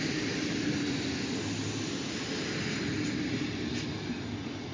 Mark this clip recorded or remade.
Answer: recorded